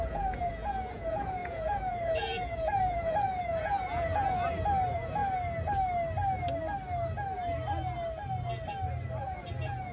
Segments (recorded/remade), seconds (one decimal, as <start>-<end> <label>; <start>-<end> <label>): 0.0-5.2 remade; 5.2-9.2 recorded; 9.2-9.9 remade